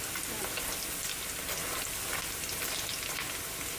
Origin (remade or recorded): recorded